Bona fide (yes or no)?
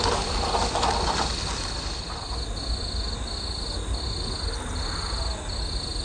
yes